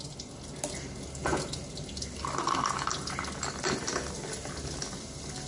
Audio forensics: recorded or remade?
recorded